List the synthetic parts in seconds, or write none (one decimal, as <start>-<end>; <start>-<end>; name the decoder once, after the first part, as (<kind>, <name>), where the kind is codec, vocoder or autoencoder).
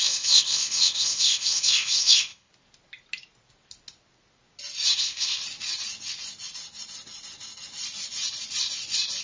0.0-2.5 (codec, ZipCodec); 5.0-5.4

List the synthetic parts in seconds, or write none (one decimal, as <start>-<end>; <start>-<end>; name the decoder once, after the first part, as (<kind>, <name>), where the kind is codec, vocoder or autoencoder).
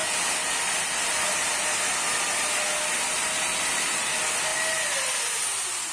none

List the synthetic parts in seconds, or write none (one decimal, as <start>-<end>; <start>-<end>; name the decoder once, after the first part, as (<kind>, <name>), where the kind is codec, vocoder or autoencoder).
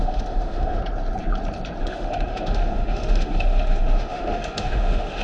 0.0-0.8 (autoencoder, DAC-VAE); 1.8-5.2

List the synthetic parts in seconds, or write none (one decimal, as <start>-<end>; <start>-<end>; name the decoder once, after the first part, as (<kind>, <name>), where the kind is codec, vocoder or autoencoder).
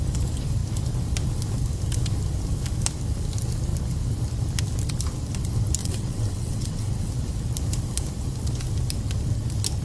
5.8-7.1 (vocoder, WaveNeXt)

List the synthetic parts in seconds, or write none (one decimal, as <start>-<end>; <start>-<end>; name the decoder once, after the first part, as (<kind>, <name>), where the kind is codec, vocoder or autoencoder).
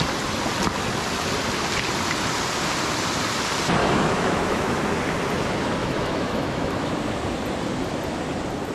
3.8-4.8 (autoencoder, DAC-VAE); 5.8-6.9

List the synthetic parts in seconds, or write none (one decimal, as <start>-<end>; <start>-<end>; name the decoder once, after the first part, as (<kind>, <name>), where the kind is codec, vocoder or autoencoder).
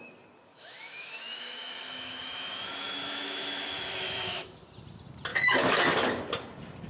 0.5-4.6 (autoencoder, DAC-VAE); 5.3-5.8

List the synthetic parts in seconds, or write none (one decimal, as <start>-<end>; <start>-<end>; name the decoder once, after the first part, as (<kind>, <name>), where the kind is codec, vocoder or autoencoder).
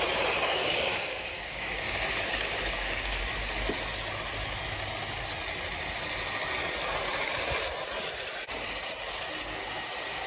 0.6-3.2 (codec, DAC)